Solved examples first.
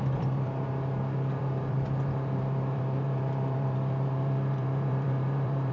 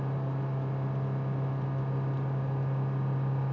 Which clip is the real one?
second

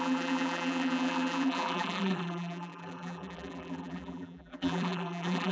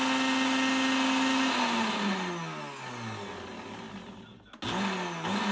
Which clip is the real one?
second